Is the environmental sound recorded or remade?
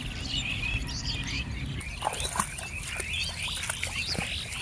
recorded